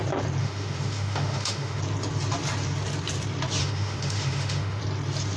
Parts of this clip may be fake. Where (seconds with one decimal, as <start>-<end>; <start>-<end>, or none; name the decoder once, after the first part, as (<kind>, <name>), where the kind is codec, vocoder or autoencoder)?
0.4-1.8 (autoencoder, DAC-VAE); 3.6-4.8